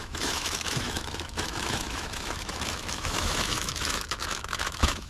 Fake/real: fake